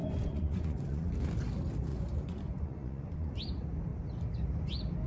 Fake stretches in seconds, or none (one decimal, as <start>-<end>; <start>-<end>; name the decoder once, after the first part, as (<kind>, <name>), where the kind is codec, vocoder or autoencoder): 0.0-1.1 (vocoder, Vocos); 1.9-3.3